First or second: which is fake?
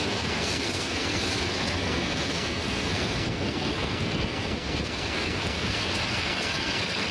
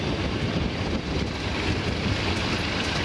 first